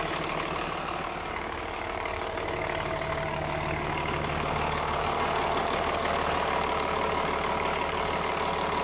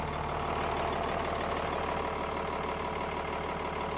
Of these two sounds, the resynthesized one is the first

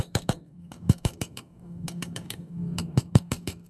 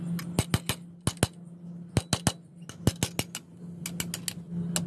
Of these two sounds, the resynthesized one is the first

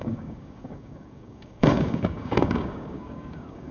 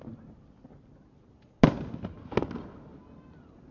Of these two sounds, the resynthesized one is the first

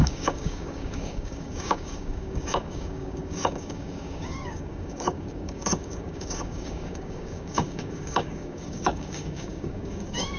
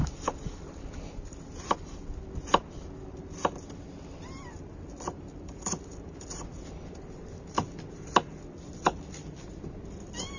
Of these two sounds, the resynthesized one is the first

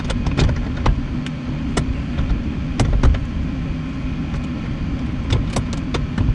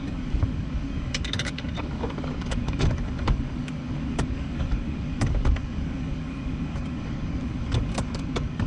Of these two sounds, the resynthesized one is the second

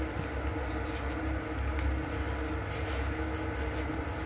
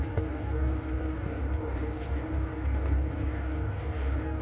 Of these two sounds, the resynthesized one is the second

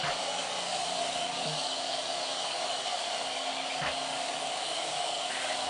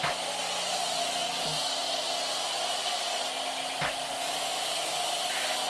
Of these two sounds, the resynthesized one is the first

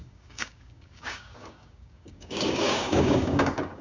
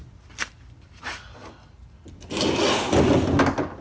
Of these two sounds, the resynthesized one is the first